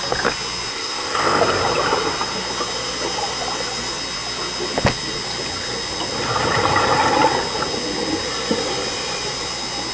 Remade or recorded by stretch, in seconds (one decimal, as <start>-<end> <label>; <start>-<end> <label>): 0.0-0.7 recorded; 0.7-1.4 remade; 1.4-9.9 recorded